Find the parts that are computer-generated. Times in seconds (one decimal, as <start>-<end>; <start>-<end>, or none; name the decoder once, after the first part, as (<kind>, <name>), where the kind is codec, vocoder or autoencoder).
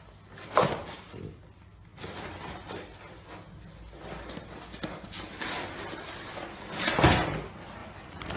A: none